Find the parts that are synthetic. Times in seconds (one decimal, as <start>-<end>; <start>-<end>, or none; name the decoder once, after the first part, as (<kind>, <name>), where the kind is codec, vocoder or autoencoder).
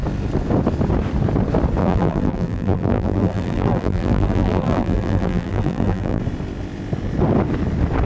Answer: 1.8-6.2 (vocoder, BigVGAN v2)